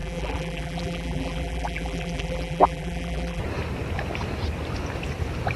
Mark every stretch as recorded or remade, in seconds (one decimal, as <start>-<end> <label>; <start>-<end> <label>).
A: 0.0-3.4 remade; 3.4-5.6 recorded